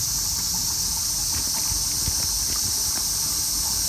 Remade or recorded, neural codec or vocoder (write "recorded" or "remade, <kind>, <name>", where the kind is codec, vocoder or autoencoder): recorded